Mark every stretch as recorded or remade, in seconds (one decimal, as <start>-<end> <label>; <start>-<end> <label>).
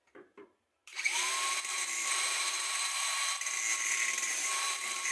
0.0-3.2 remade; 3.2-4.3 recorded; 4.3-5.1 remade